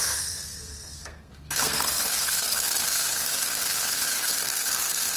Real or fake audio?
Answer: fake